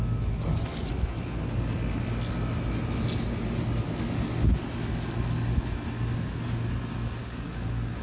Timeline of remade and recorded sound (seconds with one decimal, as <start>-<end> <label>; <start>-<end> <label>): 0.0-7.2 recorded; 7.2-8.0 remade